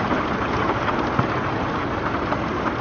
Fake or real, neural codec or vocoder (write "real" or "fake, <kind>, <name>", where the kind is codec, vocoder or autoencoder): fake, vocoder, BigVGAN v2